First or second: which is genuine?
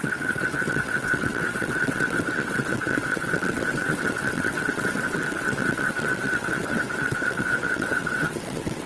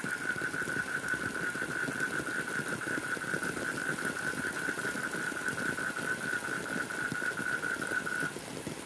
second